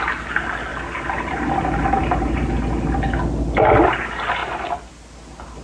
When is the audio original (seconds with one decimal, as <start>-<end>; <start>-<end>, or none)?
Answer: 0.0-0.7; 2.5-4.4; 4.9-5.6